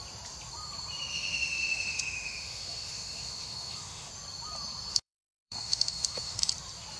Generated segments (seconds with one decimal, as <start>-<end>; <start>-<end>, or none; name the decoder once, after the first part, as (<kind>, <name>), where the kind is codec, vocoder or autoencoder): 1.1-4.1 (autoencoder, DAC-VAE); 4.9-6.5

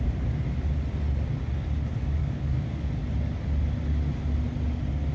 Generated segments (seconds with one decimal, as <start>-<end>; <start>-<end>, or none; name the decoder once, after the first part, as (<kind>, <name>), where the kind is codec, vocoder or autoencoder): 2.2-2.9 (codec, DAC)

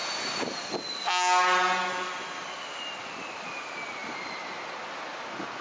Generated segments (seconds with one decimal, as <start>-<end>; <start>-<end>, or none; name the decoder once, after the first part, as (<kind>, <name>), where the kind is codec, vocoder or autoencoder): none

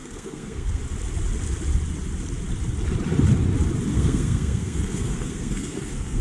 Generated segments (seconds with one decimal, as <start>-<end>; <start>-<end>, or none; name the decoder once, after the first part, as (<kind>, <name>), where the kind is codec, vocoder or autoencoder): 0.0-0.8 (codec, SNAC); 3.9-6.2

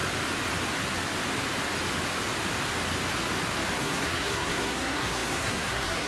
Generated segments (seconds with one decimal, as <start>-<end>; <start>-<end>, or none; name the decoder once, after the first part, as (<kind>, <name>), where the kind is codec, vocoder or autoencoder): 3.7-6.1 (codec, SNAC)

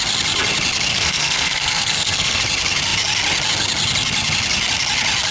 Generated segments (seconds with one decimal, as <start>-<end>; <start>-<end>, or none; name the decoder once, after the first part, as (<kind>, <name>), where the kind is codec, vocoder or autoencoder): 0.9-2.4 (codec, SNAC)

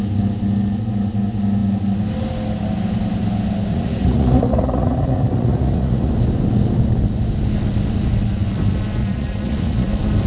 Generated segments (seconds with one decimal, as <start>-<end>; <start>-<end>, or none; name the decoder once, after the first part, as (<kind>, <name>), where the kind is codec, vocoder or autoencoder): 3.7-6.1 (vocoder, Vocos); 9.0-9.9

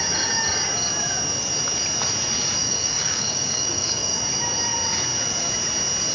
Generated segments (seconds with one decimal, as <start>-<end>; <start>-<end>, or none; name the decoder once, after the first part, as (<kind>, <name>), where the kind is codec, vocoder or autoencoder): 2.6-4.2 (codec, DAC)